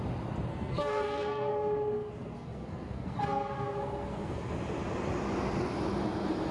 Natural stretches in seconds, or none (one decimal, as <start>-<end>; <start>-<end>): 0.0-0.5; 4.4-6.5